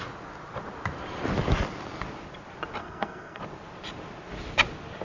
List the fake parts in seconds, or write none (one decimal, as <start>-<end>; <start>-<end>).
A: 2.8-3.4